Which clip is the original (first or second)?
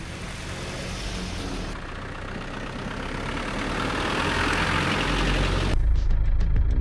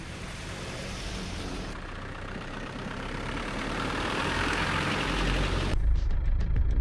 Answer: first